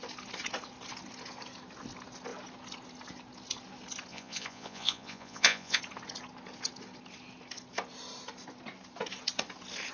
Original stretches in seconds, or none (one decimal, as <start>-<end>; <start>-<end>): 0.0-4.1; 5.8-9.9